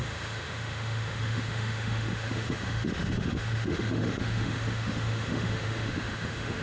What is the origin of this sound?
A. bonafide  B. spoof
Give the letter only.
B